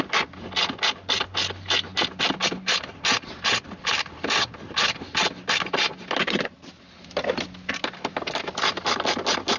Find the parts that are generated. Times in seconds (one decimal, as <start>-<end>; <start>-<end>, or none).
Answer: none